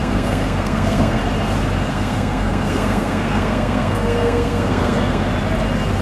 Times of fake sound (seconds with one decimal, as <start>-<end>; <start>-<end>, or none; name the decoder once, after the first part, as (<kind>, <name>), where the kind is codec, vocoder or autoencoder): 0.0-1.2 (codec, SNAC); 1.9-5.3